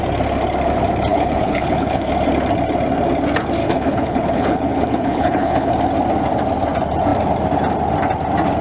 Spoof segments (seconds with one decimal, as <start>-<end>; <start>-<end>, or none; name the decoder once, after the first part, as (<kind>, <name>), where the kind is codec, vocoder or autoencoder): 1.1-2.1 (codec, HILCodec); 3.6-5.7